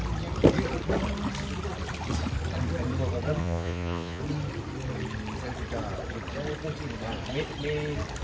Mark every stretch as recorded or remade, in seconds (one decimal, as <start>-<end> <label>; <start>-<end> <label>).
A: 0.0-3.4 recorded; 3.4-4.2 remade; 4.2-8.2 recorded